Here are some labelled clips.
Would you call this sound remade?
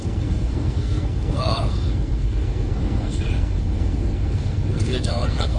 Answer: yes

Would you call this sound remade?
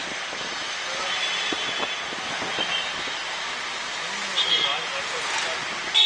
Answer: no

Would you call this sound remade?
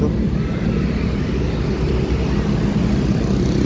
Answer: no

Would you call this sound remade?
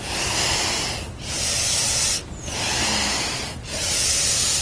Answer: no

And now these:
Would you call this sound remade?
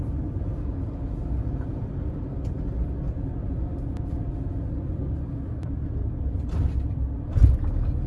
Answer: no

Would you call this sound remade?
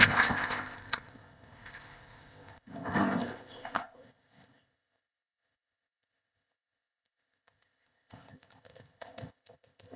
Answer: yes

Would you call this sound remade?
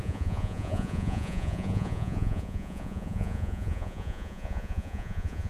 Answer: yes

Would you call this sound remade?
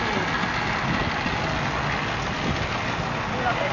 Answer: no